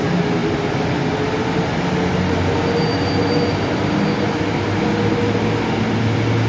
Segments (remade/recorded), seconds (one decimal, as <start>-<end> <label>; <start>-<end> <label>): 0.0-6.5 recorded